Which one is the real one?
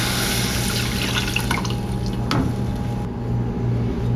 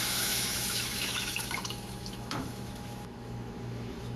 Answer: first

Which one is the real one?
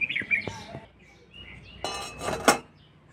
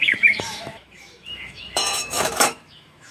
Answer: first